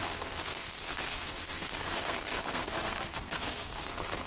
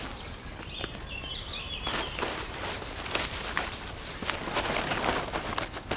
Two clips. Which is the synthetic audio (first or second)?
first